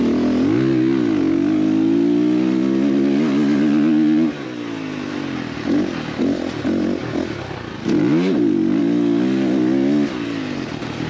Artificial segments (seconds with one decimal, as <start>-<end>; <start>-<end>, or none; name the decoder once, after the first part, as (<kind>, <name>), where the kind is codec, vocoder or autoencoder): none